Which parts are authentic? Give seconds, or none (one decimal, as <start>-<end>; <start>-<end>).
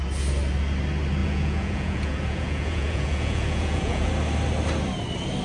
0.0-1.2; 4.1-5.4